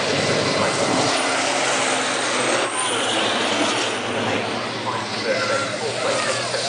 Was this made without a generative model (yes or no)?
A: yes